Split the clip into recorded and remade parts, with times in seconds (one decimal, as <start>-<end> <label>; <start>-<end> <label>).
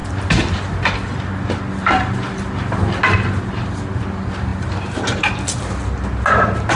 0.0-6.8 recorded